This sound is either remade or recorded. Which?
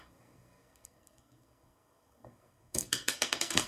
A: remade